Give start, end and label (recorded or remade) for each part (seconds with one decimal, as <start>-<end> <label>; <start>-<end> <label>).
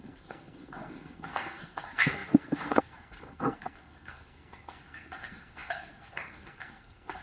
0.0-7.2 remade